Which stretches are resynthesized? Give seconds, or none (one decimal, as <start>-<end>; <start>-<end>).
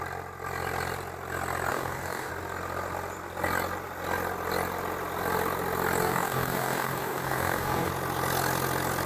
1.7-2.3; 6.0-7.9